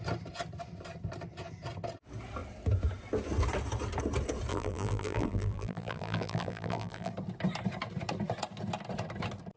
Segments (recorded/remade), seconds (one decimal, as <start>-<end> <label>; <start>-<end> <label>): 0.0-4.5 recorded; 4.5-7.1 remade; 7.1-9.6 recorded